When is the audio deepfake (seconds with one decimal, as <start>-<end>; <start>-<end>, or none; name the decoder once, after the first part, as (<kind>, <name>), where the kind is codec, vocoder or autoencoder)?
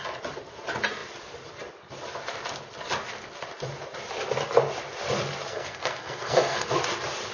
5.5-6.7 (codec, SNAC)